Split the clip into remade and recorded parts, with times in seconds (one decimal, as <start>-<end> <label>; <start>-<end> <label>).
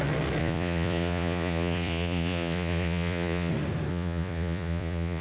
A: 0.0-0.4 recorded; 0.4-3.5 remade; 3.5-3.9 recorded; 3.9-5.2 remade